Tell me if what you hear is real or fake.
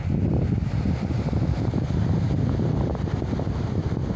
real